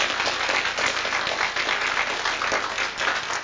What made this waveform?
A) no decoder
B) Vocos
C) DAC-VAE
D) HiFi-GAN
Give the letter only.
A